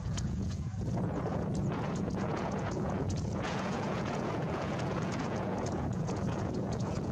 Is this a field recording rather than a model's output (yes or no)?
no